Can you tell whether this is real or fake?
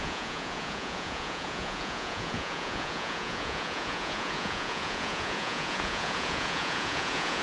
fake